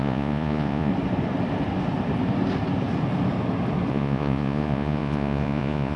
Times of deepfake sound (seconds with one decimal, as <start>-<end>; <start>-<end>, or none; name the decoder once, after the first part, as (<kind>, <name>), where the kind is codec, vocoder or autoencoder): 0.0-0.9 (vocoder, Vocos); 3.9-6.0